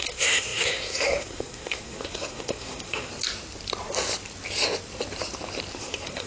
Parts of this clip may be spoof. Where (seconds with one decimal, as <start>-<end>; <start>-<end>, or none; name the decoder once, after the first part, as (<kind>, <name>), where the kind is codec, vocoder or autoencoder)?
0.0-3.1 (codec, SNAC); 5.8-6.3